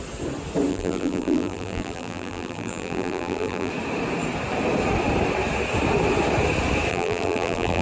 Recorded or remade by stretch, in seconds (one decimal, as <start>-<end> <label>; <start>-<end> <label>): 0.0-0.7 recorded; 0.7-3.7 remade; 3.7-6.9 recorded; 6.9-7.8 remade